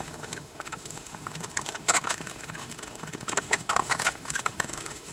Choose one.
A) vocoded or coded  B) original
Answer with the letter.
A